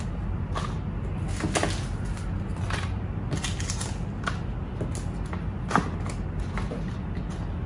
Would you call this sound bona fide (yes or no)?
yes